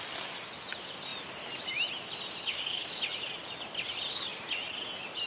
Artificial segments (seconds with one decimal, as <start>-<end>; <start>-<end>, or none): 2.5-3.0